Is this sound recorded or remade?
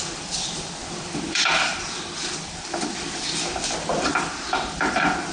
remade